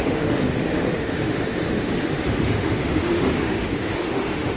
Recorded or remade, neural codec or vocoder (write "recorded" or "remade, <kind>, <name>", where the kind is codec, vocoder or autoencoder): remade, autoencoder, DAC-VAE